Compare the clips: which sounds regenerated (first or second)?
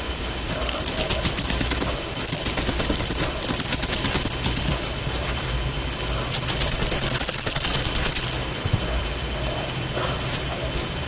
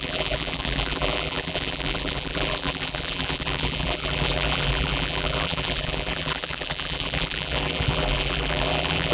second